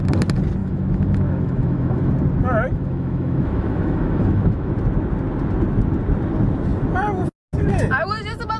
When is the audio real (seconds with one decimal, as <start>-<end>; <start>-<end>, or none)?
0.0-0.6; 2.1-2.7; 4.7-8.6